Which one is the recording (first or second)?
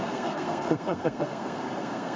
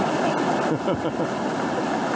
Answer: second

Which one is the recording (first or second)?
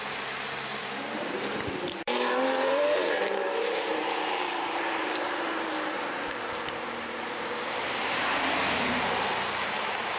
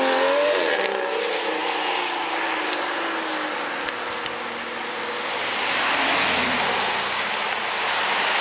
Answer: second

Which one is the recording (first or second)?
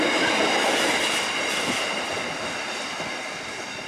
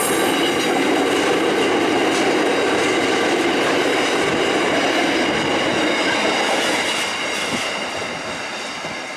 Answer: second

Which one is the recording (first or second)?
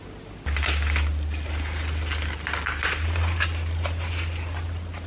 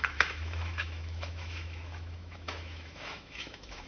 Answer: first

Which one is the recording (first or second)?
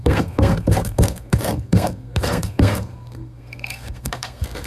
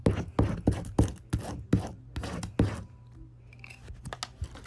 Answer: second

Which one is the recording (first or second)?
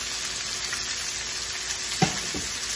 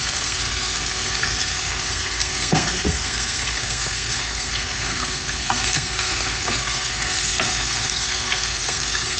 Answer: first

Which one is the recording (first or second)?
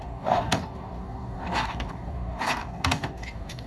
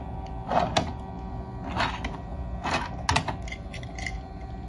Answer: second